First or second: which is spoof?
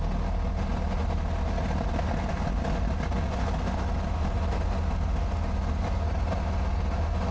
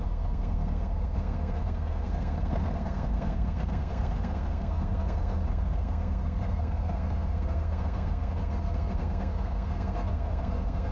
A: second